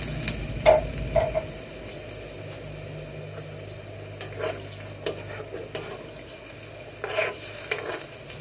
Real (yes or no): yes